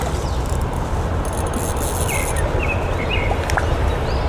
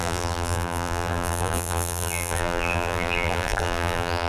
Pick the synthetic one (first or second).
second